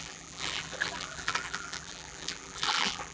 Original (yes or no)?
no